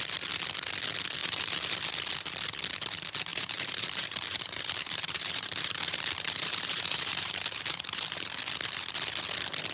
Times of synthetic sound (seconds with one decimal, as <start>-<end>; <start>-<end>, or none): 1.2-1.7; 3.3-8.4